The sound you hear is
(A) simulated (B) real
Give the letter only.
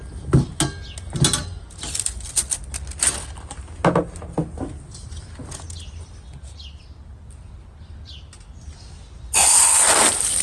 B